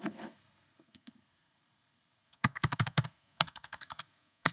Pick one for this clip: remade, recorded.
remade